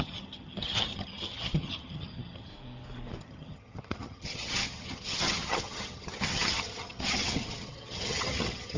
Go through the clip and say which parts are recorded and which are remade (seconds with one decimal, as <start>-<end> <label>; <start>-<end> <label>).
0.0-2.5 remade; 2.5-3.2 recorded; 3.2-8.8 remade